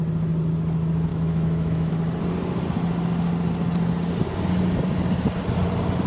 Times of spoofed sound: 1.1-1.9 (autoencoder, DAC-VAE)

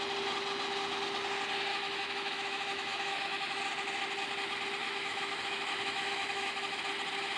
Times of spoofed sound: 1.7-3.6 (autoencoder, DAC-VAE); 4.8-6.8

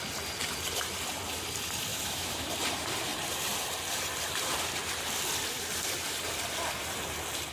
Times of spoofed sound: 1.9-2.5 (autoencoder, DAC-VAE)

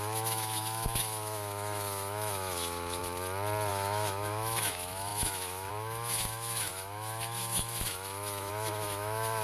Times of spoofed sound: 0.0-3.0 (autoencoder, DAC-VAE); 3.7-9.4

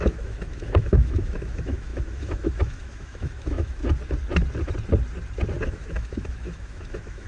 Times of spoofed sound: 0.0-3.8 (autoencoder, DAC-VAE); 5.7-7.3